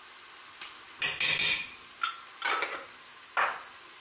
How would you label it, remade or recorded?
recorded